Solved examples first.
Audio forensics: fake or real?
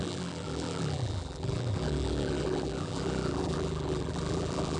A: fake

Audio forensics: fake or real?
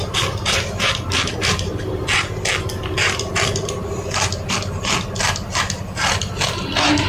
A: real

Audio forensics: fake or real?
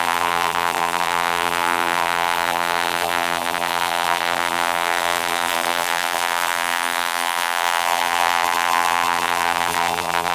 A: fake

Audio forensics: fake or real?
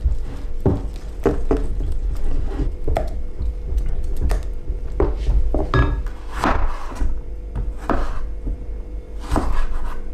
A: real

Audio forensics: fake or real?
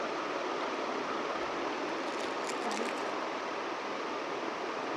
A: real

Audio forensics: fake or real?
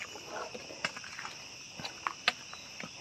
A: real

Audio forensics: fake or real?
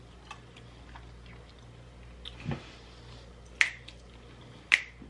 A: real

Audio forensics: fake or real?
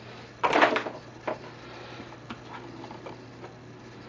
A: real